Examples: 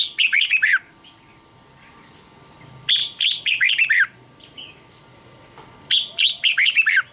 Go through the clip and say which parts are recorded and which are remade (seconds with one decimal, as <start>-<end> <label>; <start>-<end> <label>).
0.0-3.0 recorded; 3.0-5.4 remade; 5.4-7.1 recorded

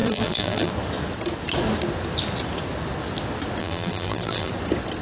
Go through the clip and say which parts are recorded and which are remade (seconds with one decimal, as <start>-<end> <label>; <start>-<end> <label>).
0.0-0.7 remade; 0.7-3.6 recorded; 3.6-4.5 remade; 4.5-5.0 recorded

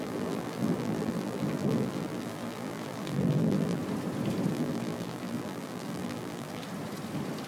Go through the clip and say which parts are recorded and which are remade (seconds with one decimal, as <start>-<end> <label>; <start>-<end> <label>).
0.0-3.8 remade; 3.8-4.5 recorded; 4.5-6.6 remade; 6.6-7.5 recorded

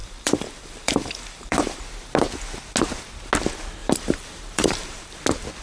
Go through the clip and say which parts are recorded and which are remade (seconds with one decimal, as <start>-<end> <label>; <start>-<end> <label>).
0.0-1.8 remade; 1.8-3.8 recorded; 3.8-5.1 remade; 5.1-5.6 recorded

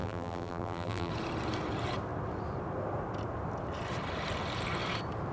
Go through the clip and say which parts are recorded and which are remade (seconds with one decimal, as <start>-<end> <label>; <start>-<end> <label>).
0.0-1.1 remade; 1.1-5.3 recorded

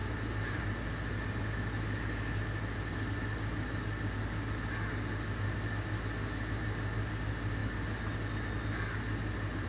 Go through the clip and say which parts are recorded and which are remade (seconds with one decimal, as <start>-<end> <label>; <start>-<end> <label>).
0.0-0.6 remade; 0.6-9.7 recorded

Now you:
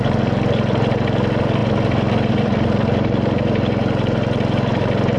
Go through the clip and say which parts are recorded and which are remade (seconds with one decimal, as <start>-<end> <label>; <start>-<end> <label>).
0.0-5.2 recorded